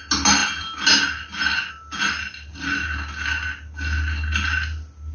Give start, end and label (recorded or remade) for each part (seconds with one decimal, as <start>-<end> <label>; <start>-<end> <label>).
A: 0.0-5.1 recorded